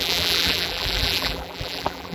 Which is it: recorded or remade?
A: remade